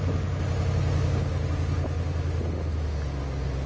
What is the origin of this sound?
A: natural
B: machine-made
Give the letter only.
A